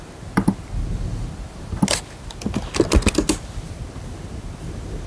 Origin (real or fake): real